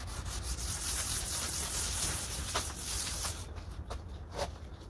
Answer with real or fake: fake